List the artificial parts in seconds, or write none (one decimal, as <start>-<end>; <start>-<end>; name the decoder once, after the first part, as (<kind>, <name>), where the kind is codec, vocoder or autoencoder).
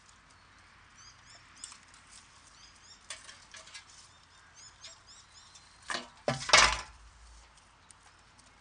none